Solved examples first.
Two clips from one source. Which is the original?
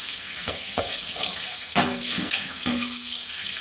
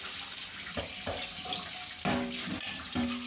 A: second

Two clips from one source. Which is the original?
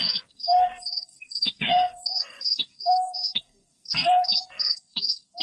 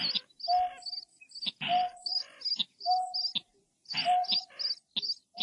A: second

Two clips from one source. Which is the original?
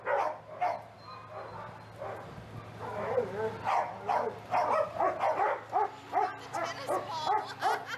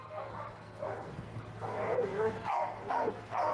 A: first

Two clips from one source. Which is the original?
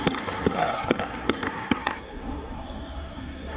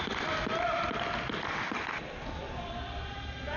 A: second